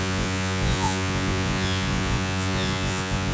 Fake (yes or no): yes